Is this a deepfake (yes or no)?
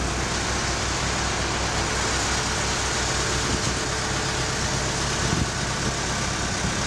no